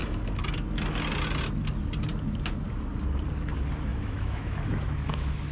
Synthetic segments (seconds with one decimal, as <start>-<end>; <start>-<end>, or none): 3.9-5.5